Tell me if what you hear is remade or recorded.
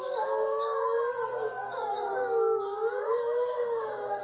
remade